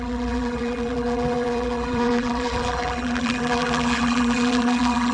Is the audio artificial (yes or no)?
yes